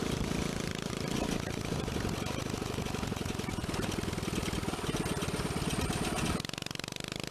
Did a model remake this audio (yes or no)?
no